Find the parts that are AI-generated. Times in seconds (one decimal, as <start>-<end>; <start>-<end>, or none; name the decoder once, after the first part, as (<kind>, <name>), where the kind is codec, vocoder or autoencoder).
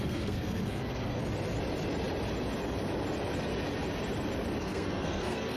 0.0-1.2 (codec, SNAC); 4.6-5.6